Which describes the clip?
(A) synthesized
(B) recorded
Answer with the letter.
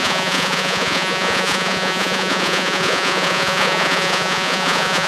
A